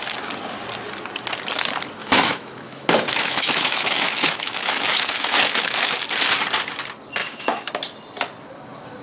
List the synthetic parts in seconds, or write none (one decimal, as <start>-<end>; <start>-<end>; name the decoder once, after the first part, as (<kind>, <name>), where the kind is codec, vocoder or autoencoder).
2.0-6.0 (autoencoder, DAC-VAE); 7.2-7.7